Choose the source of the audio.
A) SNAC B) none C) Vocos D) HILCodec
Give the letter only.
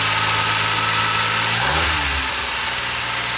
B